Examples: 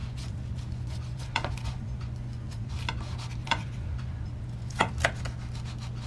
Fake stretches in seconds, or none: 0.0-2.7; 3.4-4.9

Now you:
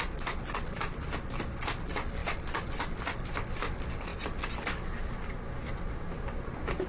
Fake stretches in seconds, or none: none

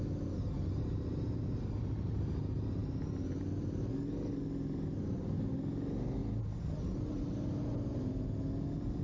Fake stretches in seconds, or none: none

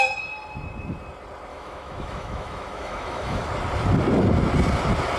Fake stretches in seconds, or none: 1.5-3.5

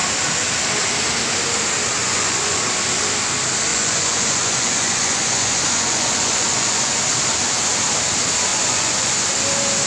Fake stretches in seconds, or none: 2.0-2.6; 3.7-7.0; 8.5-9.3